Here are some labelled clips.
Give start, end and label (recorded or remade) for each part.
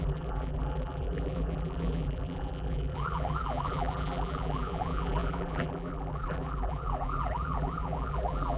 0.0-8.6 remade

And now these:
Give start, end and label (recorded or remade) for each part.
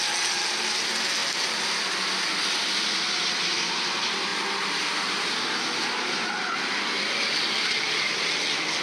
0.0-8.8 recorded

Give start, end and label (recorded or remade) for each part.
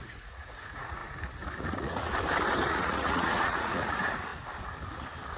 0.0-1.0 remade; 1.0-1.6 recorded; 1.6-2.1 remade; 2.1-2.7 recorded; 2.7-4.3 remade; 4.3-5.4 recorded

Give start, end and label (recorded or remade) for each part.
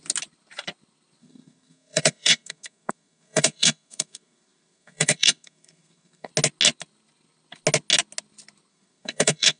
0.0-1.2 recorded; 1.2-6.3 remade; 6.3-8.7 recorded; 8.7-9.6 remade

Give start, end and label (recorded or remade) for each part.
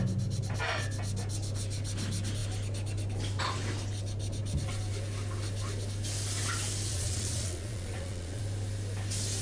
0.0-6.9 recorded; 6.9-8.4 remade; 8.4-9.4 recorded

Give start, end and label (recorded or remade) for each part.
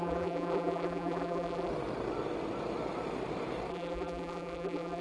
0.0-1.7 remade; 1.7-3.7 recorded; 3.7-5.0 remade